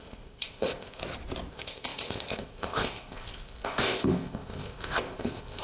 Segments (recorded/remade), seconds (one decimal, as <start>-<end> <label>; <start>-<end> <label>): 0.0-1.0 remade; 1.0-1.5 recorded; 1.5-5.6 remade